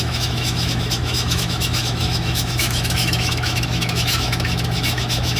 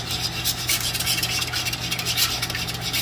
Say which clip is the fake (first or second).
first